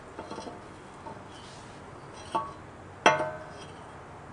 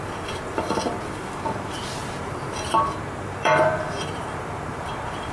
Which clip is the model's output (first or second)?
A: second